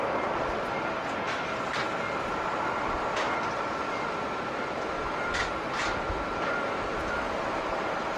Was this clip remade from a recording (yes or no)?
no